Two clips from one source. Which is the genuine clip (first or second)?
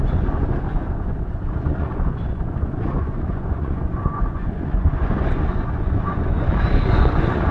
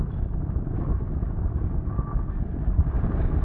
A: second